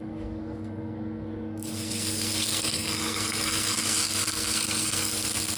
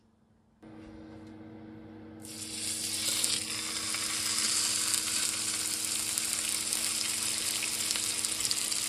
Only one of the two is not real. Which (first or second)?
first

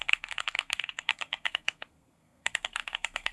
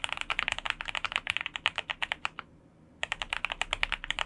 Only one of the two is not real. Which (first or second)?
first